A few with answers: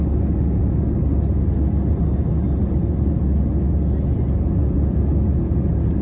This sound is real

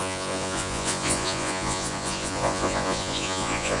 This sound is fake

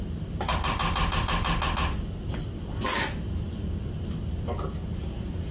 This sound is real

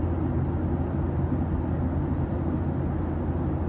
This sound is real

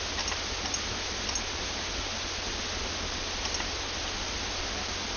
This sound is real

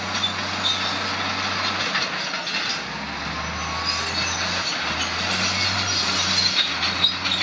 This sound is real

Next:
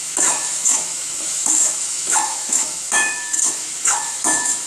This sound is fake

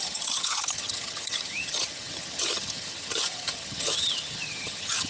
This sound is fake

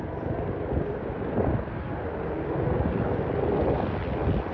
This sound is real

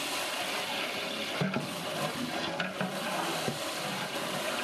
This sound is real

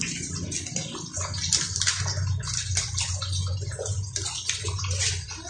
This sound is real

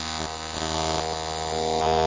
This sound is real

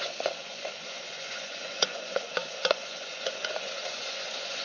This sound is fake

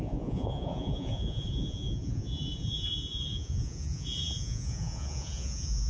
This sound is fake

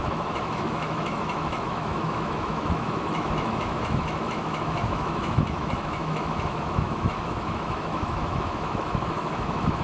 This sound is fake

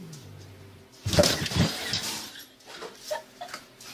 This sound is real